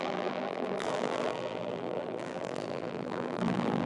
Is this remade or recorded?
remade